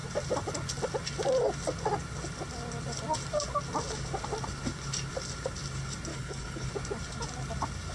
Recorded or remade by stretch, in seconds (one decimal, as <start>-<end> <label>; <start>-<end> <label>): 0.0-6.1 recorded; 6.1-6.7 remade; 6.7-7.9 recorded